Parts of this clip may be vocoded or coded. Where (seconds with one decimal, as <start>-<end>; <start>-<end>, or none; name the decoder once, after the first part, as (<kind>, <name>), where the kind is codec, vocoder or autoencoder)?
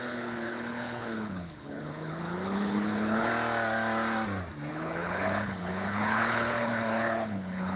0.0-3.3 (codec, HILCodec); 4.7-7.8